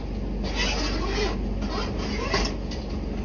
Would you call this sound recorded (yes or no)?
yes